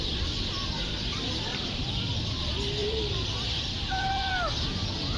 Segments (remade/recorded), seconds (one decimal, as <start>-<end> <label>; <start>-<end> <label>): 0.0-1.5 recorded; 1.5-2.2 remade; 2.2-2.8 recorded; 2.8-4.3 remade; 4.3-5.2 recorded